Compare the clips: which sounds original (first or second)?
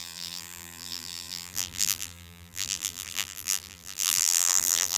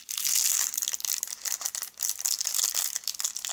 second